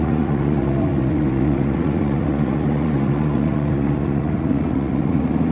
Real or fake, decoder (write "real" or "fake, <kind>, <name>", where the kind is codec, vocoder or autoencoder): fake, vocoder, Vocos